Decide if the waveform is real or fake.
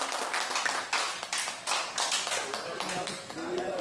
real